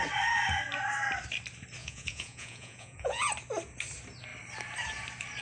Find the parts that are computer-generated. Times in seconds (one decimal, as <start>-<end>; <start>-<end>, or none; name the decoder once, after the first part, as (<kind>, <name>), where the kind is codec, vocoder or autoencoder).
1.8-3.3 (vocoder, Vocos)